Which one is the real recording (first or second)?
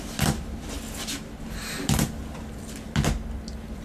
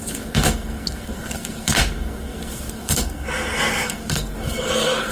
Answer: first